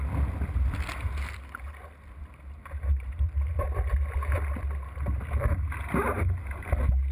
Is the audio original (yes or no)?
yes